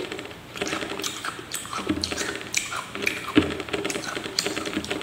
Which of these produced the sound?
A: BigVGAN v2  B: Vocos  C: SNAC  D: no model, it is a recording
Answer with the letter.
A